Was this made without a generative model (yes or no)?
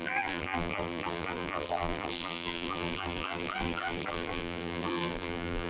no